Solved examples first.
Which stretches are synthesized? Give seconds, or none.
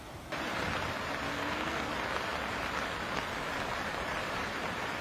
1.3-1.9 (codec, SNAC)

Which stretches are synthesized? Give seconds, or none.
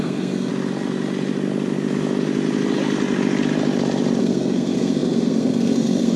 0.0-0.5 (codec, SNAC); 4.2-6.2